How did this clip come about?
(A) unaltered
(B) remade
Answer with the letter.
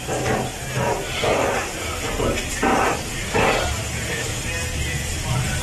A